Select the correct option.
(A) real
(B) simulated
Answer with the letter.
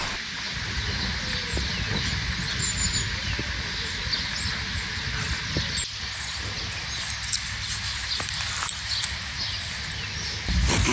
A